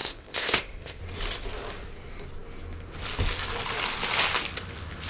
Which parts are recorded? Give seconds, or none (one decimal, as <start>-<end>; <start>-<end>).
1.0-5.1